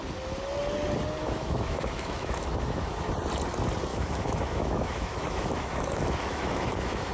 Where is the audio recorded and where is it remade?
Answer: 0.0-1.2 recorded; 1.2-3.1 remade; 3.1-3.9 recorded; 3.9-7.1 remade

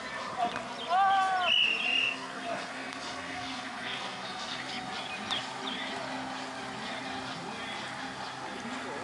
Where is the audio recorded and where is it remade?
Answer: 0.0-2.0 recorded; 2.0-4.7 remade; 4.7-9.0 recorded

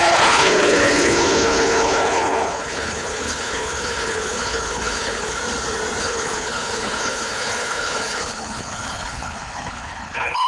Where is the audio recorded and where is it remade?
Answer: 0.0-5.4 remade; 5.4-6.0 recorded; 6.0-10.5 remade

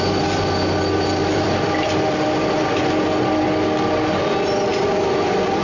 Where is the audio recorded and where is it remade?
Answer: 0.0-1.2 recorded; 1.2-2.6 remade; 2.6-4.7 recorded; 4.7-5.6 remade

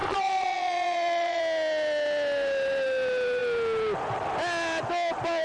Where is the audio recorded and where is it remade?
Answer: 0.0-1.4 remade; 1.4-5.4 recorded

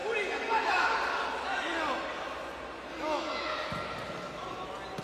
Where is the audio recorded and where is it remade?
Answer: 0.0-5.0 recorded

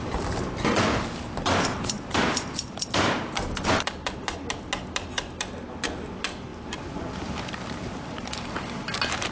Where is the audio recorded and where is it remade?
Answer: 0.0-6.5 recorded; 6.5-8.8 remade; 8.8-9.3 recorded

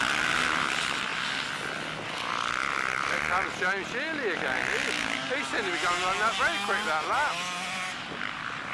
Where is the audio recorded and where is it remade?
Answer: 0.0-8.7 recorded